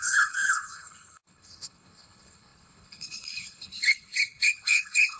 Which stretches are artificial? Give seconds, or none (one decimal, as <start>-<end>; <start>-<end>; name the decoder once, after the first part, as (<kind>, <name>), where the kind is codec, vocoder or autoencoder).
0.0-5.2 (codec, HILCodec)